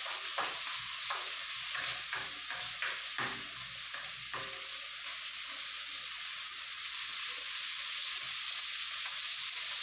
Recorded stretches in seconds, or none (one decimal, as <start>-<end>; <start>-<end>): 0.0-6.3; 6.9-9.8